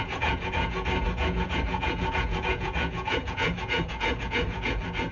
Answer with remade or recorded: remade